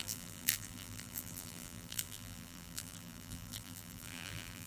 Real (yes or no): no